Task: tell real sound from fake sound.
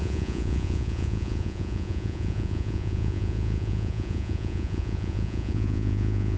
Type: fake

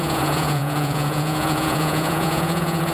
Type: fake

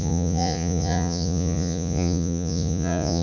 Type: fake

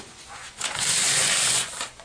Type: fake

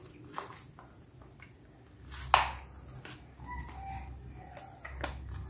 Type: real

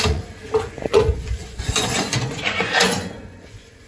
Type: fake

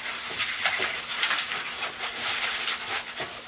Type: real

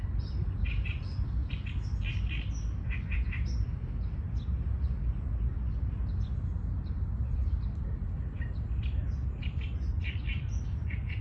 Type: real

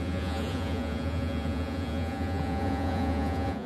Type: fake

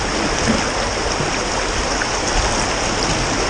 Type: real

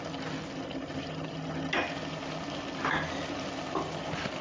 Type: real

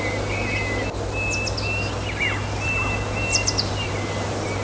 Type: real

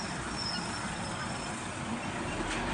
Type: real